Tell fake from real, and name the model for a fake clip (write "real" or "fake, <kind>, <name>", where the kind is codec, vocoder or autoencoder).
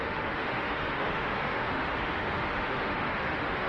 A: fake, autoencoder, DAC-VAE